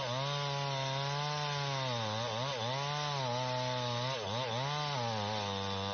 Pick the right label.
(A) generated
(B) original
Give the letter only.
B